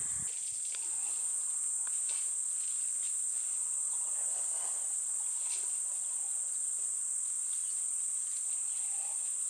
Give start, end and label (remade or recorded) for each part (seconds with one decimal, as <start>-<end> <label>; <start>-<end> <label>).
0.0-1.1 recorded; 1.1-2.0 remade; 2.0-9.5 recorded